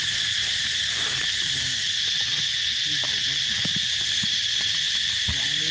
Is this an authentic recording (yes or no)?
yes